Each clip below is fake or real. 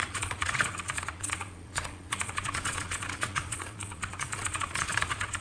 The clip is fake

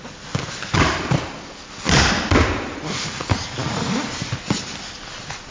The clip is real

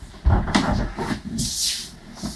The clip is real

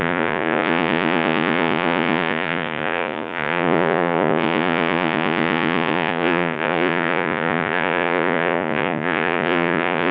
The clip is fake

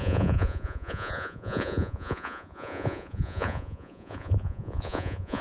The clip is fake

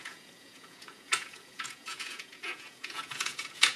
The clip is fake